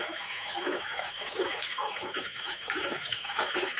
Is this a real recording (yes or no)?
no